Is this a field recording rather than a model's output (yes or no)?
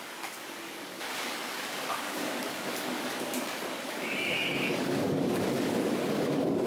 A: no